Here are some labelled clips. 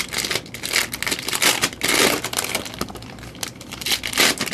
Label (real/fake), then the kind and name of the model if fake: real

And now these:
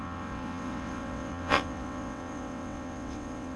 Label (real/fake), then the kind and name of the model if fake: fake, vocoder, WaveNeXt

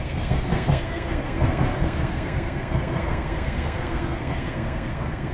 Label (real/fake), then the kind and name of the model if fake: fake, codec, SNAC